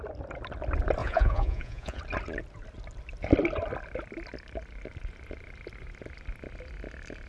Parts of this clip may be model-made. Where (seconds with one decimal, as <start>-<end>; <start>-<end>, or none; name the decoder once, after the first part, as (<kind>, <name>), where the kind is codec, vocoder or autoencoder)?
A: 1.0-2.0 (vocoder, Vocos)